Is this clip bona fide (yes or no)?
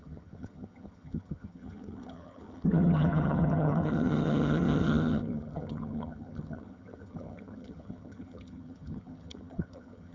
no